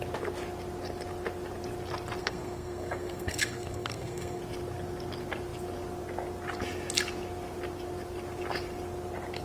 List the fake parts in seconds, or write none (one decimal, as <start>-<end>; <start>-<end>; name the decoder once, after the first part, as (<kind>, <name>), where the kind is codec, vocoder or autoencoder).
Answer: 2.2-4.4 (codec, SNAC)